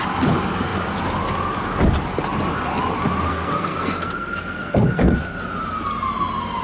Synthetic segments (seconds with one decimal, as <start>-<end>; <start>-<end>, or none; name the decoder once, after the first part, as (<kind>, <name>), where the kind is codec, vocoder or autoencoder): 3.3-5.4 (codec, SNAC)